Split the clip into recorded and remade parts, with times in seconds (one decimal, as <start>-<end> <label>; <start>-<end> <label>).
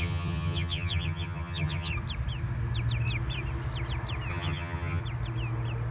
0.0-1.9 remade; 1.9-4.3 recorded; 4.3-5.0 remade; 5.0-5.9 recorded